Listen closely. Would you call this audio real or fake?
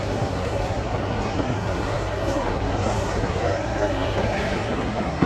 fake